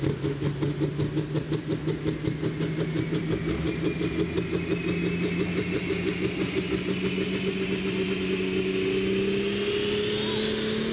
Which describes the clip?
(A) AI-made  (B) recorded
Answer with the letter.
B